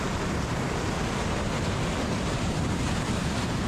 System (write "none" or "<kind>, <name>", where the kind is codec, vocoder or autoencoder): vocoder, BigVGAN v2